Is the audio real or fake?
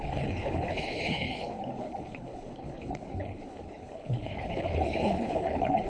fake